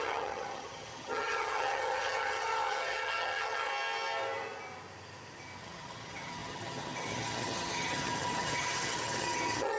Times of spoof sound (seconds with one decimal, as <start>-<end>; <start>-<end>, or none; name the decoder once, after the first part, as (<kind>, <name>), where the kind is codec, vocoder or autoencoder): 0.0-3.7 (vocoder, HiFi-GAN); 5.6-9.8